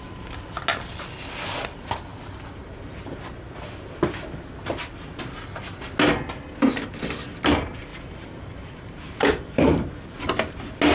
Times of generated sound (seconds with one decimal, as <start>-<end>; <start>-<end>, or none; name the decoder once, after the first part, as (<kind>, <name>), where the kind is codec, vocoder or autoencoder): 7.9-10.2 (vocoder, BigVGAN v2)